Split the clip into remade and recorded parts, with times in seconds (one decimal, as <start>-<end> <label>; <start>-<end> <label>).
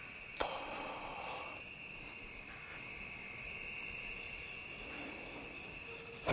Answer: 0.0-6.3 recorded